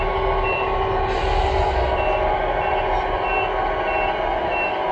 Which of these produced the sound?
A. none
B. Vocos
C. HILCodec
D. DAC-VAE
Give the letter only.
A